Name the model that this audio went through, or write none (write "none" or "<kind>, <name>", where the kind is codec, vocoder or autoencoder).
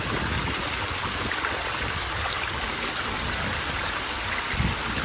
none